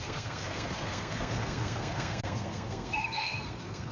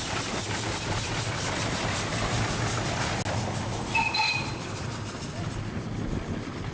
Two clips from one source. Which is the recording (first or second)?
second